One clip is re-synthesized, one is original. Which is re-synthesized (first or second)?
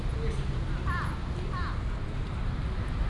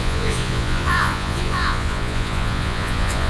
second